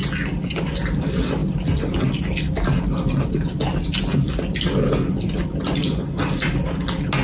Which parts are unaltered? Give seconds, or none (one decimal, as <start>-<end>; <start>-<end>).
0.0-7.2

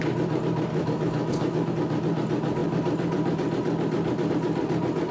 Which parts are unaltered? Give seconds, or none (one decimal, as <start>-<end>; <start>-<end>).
0.0-0.7; 1.7-5.1

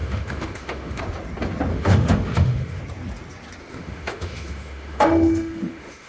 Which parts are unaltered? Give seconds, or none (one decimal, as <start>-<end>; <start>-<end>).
1.0-1.7; 2.8-3.6

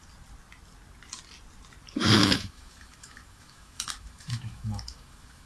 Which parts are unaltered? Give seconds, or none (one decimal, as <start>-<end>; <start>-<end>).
0.0-2.2

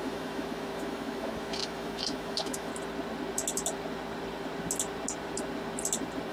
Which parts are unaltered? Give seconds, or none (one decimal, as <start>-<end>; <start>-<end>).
2.7-6.3